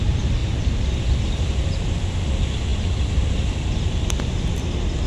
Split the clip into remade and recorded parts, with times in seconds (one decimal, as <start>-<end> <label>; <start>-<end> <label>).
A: 0.0-5.1 recorded